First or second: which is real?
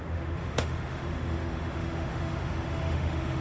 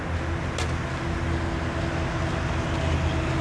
second